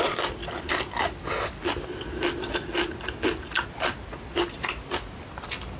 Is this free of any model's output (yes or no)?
yes